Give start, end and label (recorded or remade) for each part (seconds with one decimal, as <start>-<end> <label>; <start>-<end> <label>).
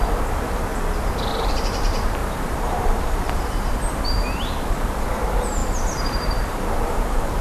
0.0-0.7 remade; 0.7-1.3 recorded; 1.3-7.4 remade